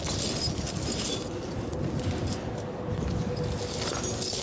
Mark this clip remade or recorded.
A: recorded